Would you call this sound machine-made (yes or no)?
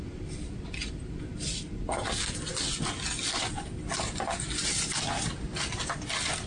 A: no